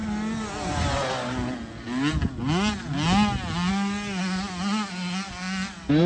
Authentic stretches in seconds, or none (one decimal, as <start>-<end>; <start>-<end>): 0.0-6.1